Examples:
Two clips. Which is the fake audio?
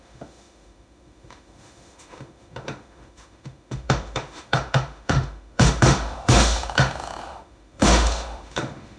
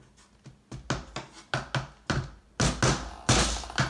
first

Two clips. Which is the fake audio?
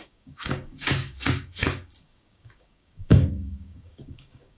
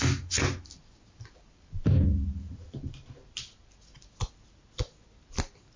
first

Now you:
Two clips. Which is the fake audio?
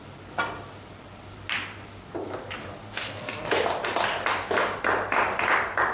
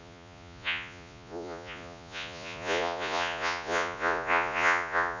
second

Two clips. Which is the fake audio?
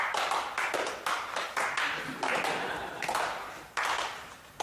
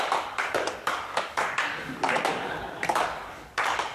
second